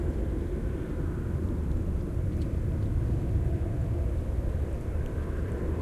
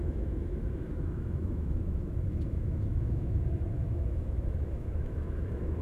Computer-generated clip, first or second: second